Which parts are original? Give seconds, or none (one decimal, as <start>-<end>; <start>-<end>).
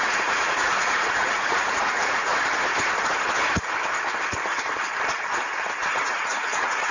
2.3-6.1